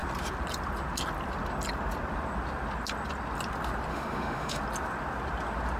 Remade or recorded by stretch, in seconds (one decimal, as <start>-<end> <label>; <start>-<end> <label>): 0.0-3.9 recorded; 3.9-4.6 remade; 4.6-5.8 recorded

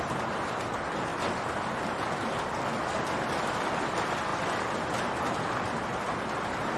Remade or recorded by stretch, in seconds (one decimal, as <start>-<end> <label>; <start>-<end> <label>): 0.0-6.8 recorded

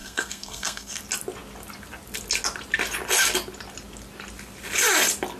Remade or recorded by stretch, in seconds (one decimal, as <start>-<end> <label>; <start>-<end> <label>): 0.0-1.0 remade; 1.0-5.4 recorded

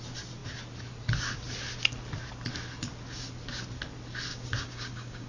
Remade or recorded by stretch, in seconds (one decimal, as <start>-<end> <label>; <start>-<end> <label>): 0.0-4.3 recorded; 4.3-5.3 remade

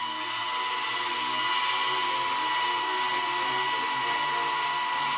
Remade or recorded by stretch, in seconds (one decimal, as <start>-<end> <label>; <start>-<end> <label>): 0.0-5.2 recorded

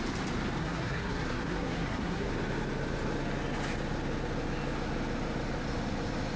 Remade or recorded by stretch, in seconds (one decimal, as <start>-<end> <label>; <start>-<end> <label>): 0.0-0.6 recorded; 0.6-2.3 remade; 2.3-6.4 recorded